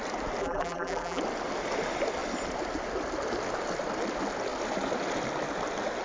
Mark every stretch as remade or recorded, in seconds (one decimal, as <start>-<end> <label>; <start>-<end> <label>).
0.0-0.4 recorded; 0.4-1.2 remade; 1.2-6.0 recorded